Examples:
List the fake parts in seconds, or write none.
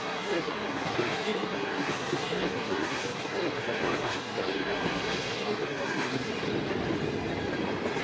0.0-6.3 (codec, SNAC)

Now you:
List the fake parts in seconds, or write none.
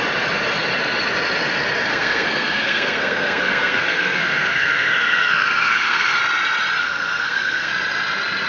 1.9-6.2 (codec, SNAC); 6.8-7.7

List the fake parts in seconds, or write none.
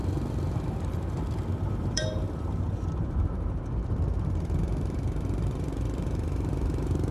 1.6-7.1 (vocoder, BigVGAN v2)